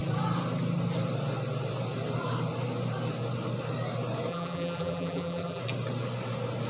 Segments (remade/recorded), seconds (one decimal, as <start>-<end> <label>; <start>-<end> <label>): 0.0-4.3 recorded; 4.3-5.6 remade; 5.6-6.7 recorded